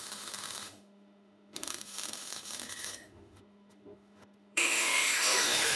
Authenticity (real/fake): fake